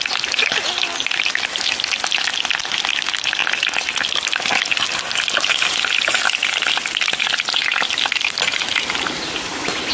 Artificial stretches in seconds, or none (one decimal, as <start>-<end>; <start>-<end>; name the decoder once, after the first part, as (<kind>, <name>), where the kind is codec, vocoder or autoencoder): none